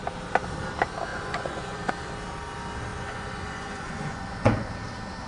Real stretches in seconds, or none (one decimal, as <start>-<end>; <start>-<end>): 0.0-1.1; 1.9-2.9; 4.7-5.3